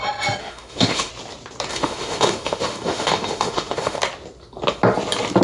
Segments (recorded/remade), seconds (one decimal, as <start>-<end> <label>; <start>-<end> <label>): 0.0-0.4 recorded; 0.4-1.1 remade; 1.1-1.7 recorded; 1.7-4.0 remade; 4.0-5.4 recorded